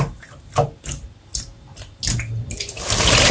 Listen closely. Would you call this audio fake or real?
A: real